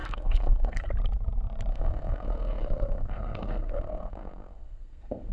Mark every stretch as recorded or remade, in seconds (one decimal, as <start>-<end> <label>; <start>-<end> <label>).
0.0-0.9 remade; 0.9-1.7 recorded; 1.7-5.3 remade